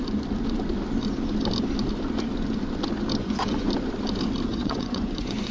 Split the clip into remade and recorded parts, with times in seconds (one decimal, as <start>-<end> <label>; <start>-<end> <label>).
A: 0.0-3.2 recorded; 3.2-3.7 remade; 3.7-4.5 recorded; 4.5-5.5 remade